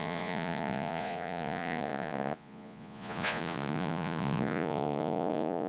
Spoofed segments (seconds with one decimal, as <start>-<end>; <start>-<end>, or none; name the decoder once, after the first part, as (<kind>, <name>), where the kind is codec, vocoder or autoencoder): 0.0-5.7 (vocoder, Vocos)